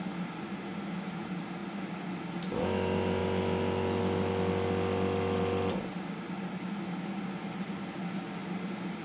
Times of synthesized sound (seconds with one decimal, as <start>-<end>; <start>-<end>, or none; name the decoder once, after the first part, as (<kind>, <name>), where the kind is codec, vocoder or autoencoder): 8.4-9.0 (vocoder, BigVGAN v2)